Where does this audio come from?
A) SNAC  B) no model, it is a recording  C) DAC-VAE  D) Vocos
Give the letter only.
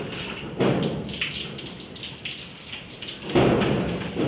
B